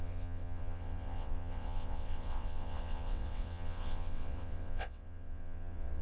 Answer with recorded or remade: remade